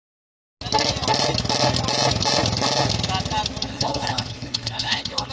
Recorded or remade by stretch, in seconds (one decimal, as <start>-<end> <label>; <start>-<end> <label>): 0.0-3.7 recorded; 3.7-5.3 remade